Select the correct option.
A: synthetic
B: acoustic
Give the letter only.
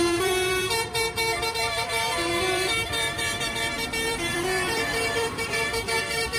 A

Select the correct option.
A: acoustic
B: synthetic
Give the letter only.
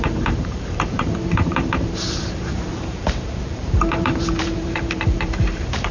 B